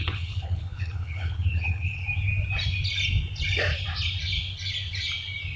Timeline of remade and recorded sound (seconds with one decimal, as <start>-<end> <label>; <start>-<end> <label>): 0.0-2.0 remade; 2.0-5.6 recorded